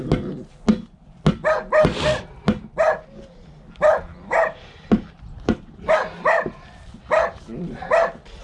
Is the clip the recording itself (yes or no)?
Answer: yes